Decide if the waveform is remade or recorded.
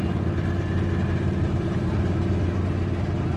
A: recorded